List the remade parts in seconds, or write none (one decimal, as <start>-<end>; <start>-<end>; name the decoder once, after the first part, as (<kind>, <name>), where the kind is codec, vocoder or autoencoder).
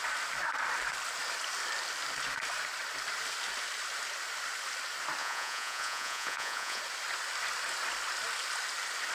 5.2-6.8 (vocoder, Vocos)